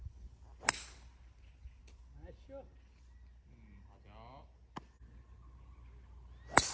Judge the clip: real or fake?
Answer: real